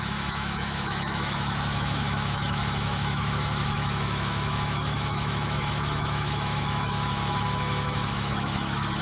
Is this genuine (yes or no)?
no